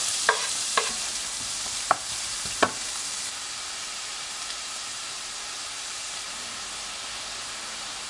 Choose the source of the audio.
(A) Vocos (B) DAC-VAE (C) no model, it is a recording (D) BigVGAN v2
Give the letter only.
D